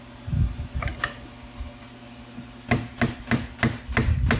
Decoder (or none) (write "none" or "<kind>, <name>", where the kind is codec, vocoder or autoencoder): none